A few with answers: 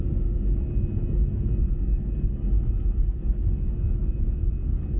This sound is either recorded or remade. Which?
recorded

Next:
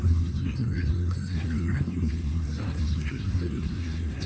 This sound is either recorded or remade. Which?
remade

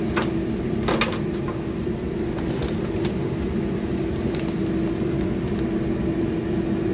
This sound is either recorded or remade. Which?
recorded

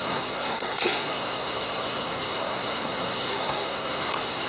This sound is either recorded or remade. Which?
remade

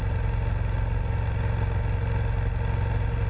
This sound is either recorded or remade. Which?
recorded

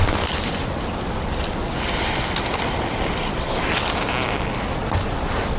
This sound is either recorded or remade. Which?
recorded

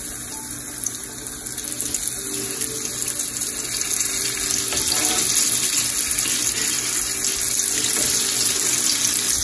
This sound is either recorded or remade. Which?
recorded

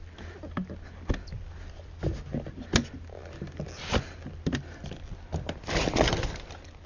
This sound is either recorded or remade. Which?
recorded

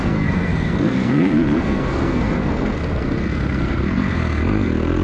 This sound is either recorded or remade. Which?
remade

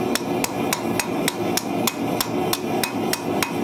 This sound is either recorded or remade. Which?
recorded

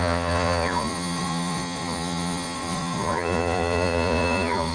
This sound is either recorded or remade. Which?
remade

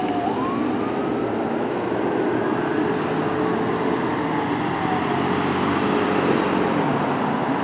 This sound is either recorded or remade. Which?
recorded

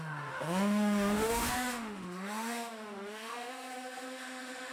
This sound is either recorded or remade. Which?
remade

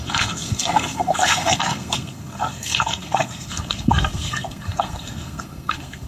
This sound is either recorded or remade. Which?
remade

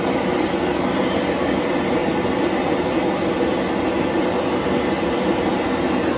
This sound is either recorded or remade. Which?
recorded